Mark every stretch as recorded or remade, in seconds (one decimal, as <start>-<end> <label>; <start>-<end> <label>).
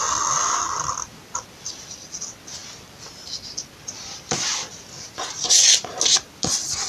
0.0-6.9 recorded